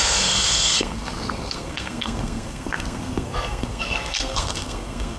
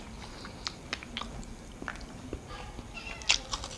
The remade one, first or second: first